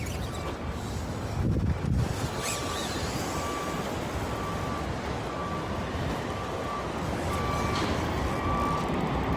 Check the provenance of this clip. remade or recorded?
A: recorded